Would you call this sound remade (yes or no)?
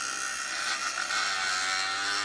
no